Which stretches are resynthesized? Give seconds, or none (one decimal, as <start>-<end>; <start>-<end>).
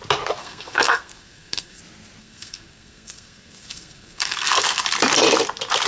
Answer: 0.4-1.8; 2.2-4.8